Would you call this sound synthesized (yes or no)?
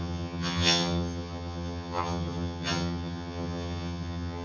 yes